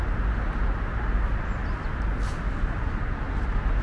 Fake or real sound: real